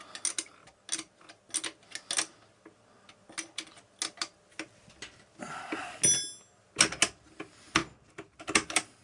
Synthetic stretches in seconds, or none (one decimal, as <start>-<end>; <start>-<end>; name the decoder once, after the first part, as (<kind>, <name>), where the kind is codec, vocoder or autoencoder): none